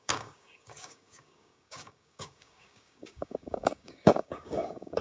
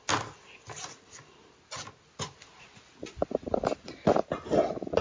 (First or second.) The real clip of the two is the second